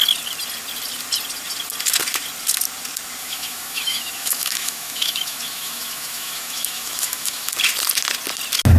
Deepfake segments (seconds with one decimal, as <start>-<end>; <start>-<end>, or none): 3.2-7.5